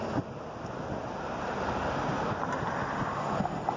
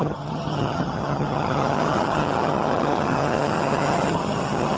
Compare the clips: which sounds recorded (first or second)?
first